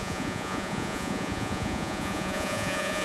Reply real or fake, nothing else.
fake